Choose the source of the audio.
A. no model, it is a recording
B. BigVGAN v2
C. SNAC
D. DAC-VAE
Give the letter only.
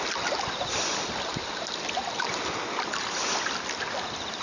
A